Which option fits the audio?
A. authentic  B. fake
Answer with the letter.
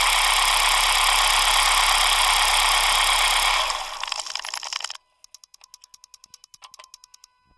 A